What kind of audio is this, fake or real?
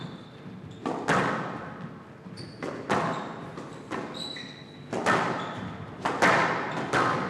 real